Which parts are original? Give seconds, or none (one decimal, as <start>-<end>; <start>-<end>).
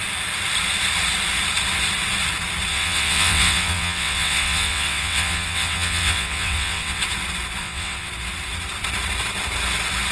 0.0-2.7; 7.0-7.6; 8.1-10.1